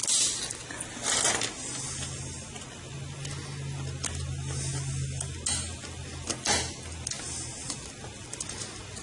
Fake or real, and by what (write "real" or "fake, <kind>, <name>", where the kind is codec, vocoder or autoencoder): real